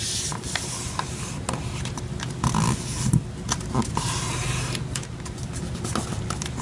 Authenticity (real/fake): real